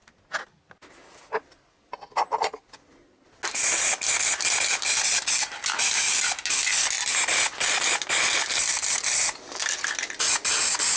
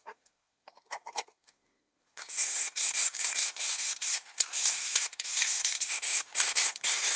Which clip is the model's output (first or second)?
second